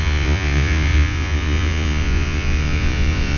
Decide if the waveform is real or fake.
fake